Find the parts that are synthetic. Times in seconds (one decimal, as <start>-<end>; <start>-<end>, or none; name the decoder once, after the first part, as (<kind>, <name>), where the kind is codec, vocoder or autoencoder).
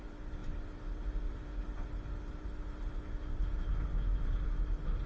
none